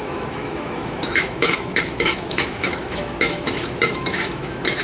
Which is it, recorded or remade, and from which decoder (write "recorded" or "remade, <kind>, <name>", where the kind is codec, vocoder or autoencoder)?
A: remade, autoencoder, DAC-VAE